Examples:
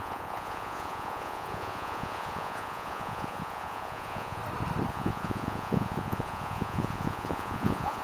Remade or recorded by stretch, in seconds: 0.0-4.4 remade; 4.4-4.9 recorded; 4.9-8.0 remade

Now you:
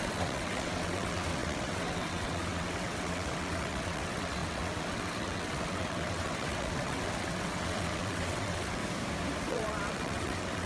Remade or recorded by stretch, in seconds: 0.0-8.8 remade; 8.8-9.4 recorded; 9.4-10.7 remade

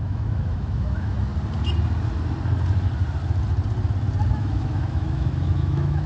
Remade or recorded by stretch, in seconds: 0.0-1.3 remade; 1.3-4.3 recorded; 4.3-6.1 remade

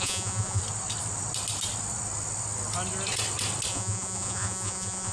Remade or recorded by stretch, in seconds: 0.0-0.6 remade; 0.6-3.7 recorded; 3.7-5.1 remade

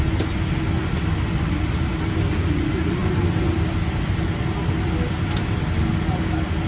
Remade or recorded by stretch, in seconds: 0.0-6.7 recorded

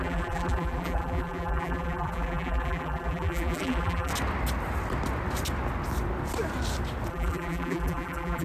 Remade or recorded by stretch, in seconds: 0.0-4.1 remade; 4.1-7.1 recorded; 7.1-8.4 remade